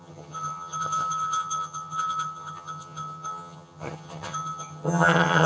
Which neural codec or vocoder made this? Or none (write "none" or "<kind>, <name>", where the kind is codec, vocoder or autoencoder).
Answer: vocoder, HiFi-GAN